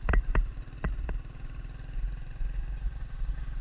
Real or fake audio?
real